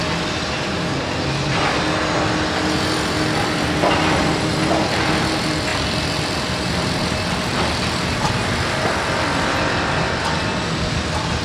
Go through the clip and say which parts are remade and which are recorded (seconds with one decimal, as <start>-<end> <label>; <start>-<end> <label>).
0.0-11.4 recorded